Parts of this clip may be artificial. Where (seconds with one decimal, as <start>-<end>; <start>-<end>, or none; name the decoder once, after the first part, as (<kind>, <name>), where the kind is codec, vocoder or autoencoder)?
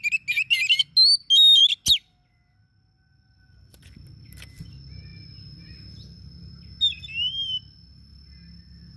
none